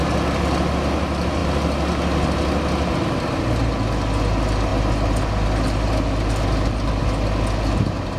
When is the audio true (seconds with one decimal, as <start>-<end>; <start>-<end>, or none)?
0.0-8.2